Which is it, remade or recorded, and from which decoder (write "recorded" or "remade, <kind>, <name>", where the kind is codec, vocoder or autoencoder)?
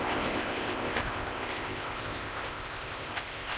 remade, codec, ZipCodec